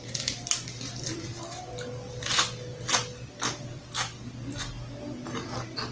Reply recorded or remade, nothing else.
recorded